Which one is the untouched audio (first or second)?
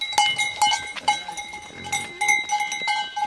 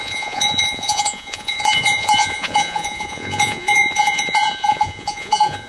first